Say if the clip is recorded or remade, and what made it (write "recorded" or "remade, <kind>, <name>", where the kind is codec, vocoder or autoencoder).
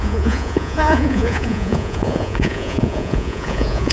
remade, vocoder, Vocos